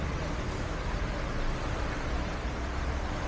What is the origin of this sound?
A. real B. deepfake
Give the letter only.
A